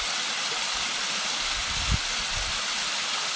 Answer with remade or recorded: recorded